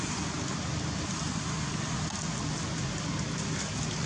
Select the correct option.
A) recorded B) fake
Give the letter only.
A